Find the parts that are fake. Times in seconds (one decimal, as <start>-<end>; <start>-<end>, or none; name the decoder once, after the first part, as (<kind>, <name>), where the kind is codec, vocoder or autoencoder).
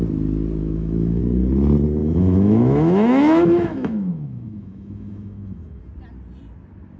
0.6-1.2 (autoencoder, DAC-VAE); 2.0-5.8